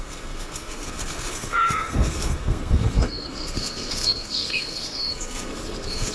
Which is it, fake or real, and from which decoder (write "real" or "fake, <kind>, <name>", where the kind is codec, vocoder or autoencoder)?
fake, codec, SNAC